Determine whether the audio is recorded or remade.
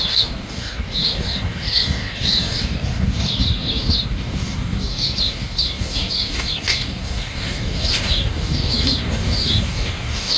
remade